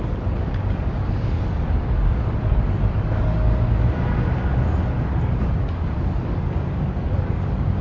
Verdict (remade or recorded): remade